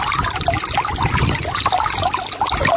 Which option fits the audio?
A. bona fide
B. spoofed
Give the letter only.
A